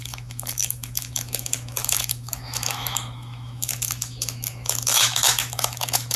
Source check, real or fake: fake